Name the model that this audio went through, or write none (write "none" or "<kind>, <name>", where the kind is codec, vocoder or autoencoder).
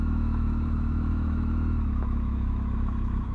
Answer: autoencoder, DAC-VAE